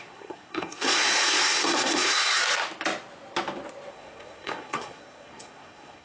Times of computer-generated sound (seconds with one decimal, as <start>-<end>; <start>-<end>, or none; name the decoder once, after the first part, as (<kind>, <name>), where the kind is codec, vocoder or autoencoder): 0.0-2.4 (codec, SNAC); 3.9-6.0